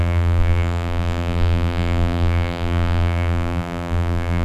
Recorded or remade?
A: remade